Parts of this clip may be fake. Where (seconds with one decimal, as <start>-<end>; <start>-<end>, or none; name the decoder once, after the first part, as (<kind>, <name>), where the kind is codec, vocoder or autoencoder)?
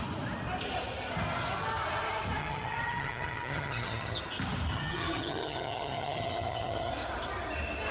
2.4-4.2 (vocoder, HiFi-GAN); 4.7-6.9